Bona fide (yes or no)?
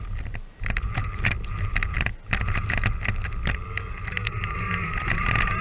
no